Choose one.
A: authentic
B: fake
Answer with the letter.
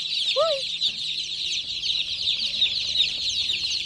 B